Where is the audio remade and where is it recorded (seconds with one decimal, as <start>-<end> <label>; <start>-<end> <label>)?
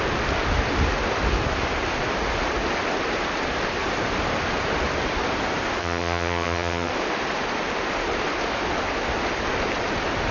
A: 0.0-5.8 recorded; 5.8-6.9 remade; 6.9-10.3 recorded